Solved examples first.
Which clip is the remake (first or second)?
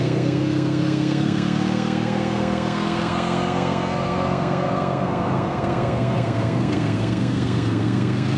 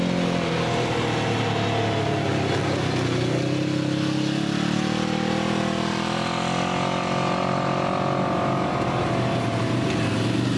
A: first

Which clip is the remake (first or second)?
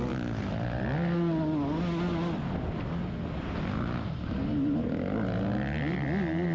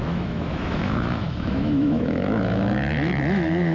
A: second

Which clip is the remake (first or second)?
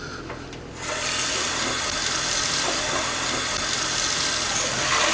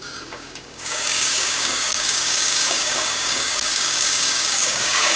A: second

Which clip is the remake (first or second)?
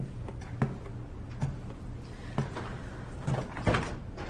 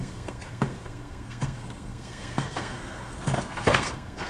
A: second